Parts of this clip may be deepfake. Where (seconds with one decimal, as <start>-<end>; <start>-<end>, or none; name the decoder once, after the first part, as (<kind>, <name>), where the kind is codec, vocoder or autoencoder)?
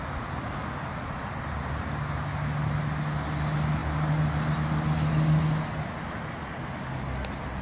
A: none